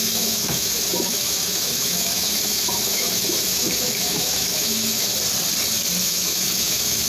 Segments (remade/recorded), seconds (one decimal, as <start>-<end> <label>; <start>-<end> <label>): 0.0-5.1 remade; 5.1-6.0 recorded; 6.0-7.1 remade